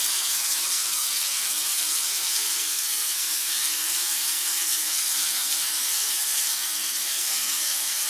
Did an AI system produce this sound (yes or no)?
yes